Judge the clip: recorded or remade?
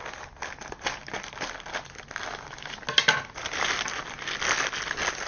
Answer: recorded